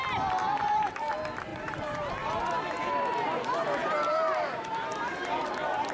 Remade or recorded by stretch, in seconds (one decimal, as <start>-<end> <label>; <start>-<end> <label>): 0.0-0.4 recorded; 0.4-1.1 remade; 1.1-1.5 recorded; 1.5-2.1 remade; 2.1-3.8 recorded; 3.8-5.4 remade; 5.4-5.9 recorded